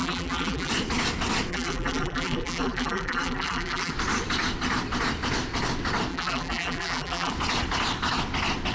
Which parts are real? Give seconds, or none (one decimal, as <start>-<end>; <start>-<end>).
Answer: 0.7-1.5; 3.9-6.1; 7.3-8.7